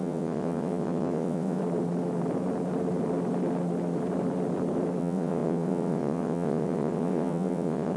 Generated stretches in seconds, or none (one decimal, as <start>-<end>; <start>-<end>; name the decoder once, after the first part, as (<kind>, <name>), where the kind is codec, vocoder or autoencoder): 0.0-1.6 (vocoder, WaveNeXt); 5.0-8.0